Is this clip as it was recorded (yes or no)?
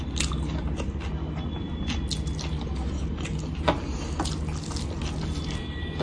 yes